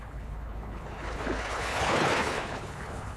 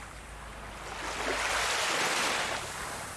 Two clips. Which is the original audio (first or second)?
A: second